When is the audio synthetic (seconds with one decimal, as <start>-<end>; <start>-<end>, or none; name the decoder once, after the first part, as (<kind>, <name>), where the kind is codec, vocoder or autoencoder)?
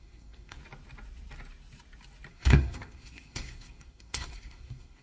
0.0-0.6 (codec, SNAC); 2.3-5.0